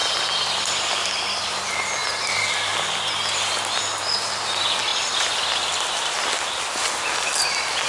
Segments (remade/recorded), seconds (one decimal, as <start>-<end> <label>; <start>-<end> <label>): 0.0-7.9 recorded